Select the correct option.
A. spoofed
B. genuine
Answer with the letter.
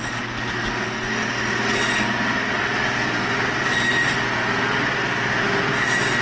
B